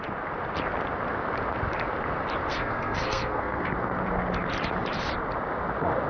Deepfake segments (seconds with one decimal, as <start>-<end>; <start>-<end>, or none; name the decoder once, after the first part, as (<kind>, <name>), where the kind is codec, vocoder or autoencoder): 2.5-3.7 (codec, SNAC)